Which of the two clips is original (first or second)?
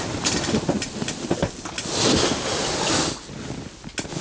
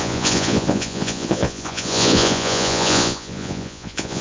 first